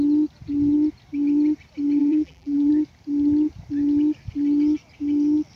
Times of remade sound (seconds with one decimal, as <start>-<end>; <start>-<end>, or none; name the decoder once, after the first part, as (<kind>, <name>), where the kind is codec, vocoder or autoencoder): 2.0-2.7 (vocoder, BigVGAN v2)